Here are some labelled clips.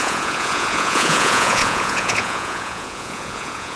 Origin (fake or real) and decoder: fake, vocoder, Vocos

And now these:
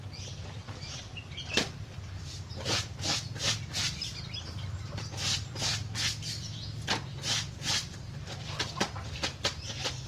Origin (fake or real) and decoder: real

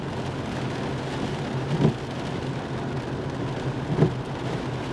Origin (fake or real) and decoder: real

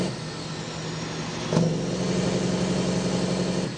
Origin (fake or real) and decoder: real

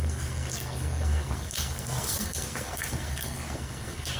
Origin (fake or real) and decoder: fake, codec, SNAC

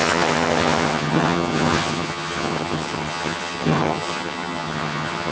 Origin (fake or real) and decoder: fake, vocoder, HiFi-GAN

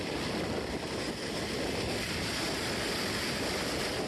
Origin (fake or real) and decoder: real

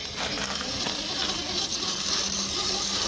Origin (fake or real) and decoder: real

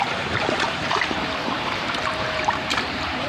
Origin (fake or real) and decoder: fake, vocoder, BigVGAN v2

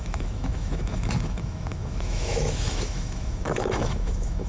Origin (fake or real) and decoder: fake, autoencoder, DAC-VAE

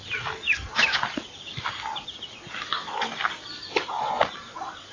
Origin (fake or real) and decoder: real